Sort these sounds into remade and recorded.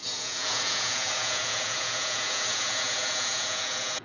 remade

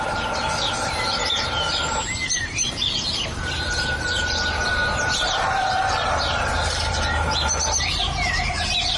remade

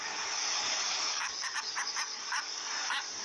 remade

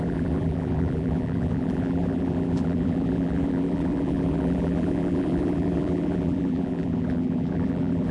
remade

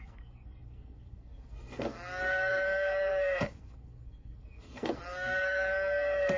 remade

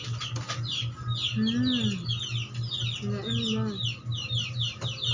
recorded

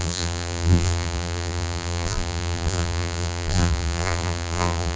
remade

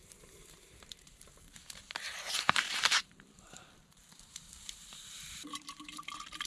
remade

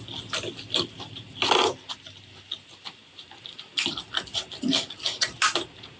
recorded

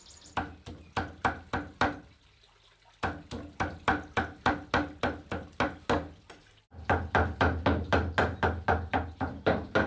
recorded